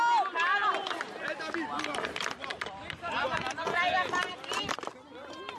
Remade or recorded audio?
recorded